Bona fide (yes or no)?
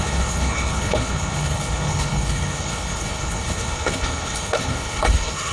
no